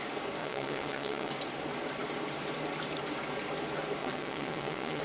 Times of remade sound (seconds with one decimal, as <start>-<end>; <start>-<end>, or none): 0.4-1.3; 4.0-5.0